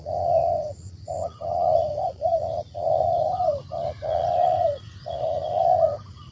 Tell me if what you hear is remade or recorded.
remade